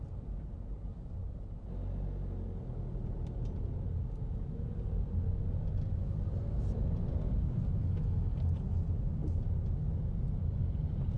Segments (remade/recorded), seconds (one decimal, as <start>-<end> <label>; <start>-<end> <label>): 0.0-11.2 recorded